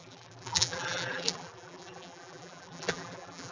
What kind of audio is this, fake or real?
fake